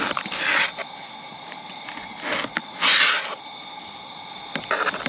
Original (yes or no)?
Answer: yes